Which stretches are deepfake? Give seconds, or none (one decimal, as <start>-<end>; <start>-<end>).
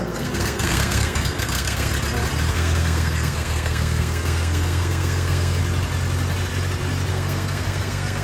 0.0-1.9; 2.5-5.6; 7.1-8.2